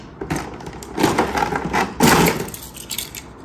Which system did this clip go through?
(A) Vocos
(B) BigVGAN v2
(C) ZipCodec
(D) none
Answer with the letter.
D